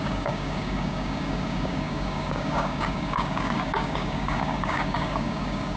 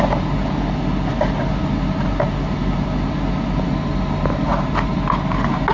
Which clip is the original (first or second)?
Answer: second